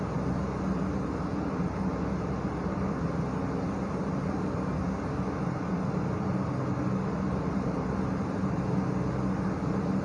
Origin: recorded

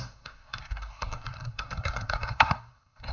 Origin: remade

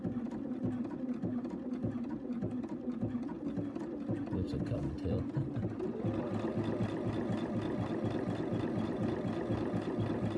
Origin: recorded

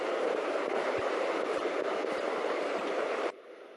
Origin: remade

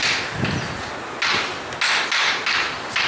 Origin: recorded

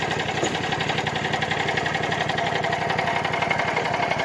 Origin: recorded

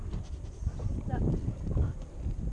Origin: recorded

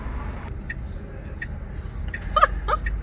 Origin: recorded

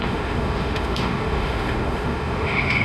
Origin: remade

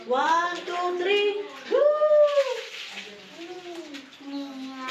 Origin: recorded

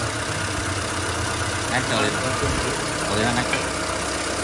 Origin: recorded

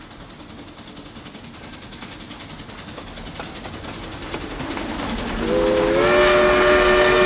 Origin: recorded